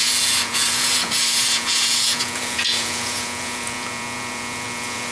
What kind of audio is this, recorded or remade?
remade